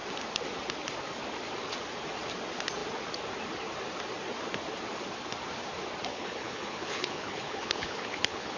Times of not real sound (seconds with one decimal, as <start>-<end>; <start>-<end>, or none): 6.1-8.6